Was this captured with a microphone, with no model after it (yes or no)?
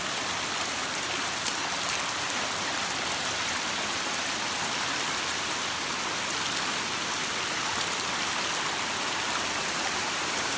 yes